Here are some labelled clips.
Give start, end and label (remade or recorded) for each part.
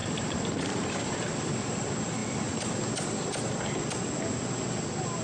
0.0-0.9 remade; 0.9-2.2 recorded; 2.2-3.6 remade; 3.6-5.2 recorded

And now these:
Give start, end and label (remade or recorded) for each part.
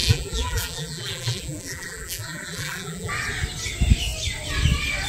0.0-3.1 remade; 3.1-5.1 recorded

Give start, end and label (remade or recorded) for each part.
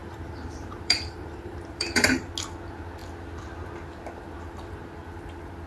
0.0-2.3 remade; 2.3-5.7 recorded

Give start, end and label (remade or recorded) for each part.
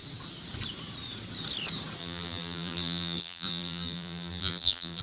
0.0-2.0 recorded; 2.0-5.0 remade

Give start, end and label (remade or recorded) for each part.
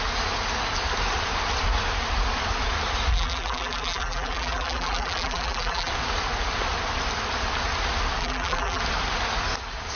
0.0-3.1 recorded; 3.1-5.9 remade; 5.9-8.2 recorded; 8.2-8.8 remade; 8.8-10.0 recorded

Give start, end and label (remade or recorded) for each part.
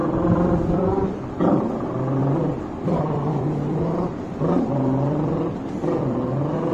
0.0-1.3 remade; 1.3-2.2 recorded; 2.2-6.2 remade; 6.2-6.7 recorded